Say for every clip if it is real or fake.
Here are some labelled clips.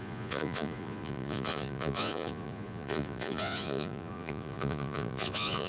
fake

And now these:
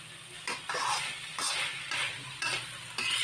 real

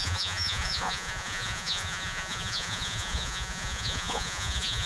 fake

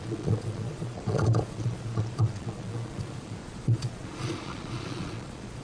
fake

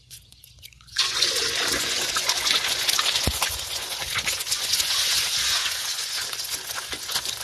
fake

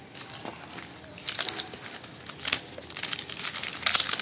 real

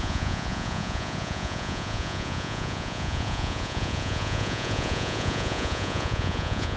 fake